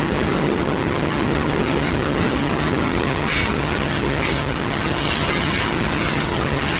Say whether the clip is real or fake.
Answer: fake